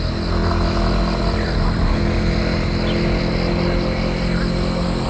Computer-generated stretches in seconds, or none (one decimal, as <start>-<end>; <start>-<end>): none